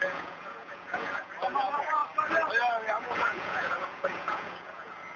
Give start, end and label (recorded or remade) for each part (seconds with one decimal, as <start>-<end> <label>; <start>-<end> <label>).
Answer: 0.0-2.0 remade; 2.0-3.0 recorded; 3.0-5.2 remade